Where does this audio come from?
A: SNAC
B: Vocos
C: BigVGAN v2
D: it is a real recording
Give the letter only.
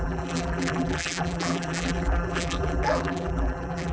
C